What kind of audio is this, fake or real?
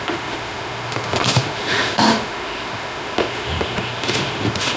fake